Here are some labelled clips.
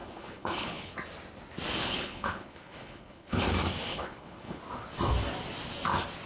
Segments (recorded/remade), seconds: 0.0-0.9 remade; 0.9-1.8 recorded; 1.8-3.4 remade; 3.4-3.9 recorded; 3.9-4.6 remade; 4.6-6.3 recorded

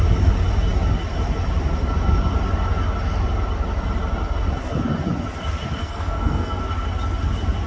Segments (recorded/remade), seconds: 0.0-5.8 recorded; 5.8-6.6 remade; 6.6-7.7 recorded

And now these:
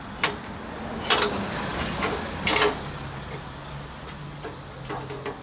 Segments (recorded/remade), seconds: 0.0-5.4 recorded

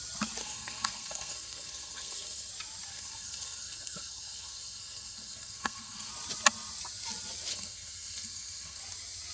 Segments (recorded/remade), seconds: 0.0-0.4 recorded; 0.4-2.5 remade; 2.5-2.9 recorded; 2.9-6.1 remade; 6.1-7.5 recorded; 7.5-8.8 remade; 8.8-9.3 recorded